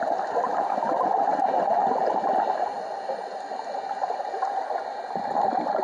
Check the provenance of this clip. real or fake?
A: real